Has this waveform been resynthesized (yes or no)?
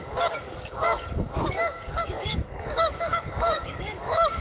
yes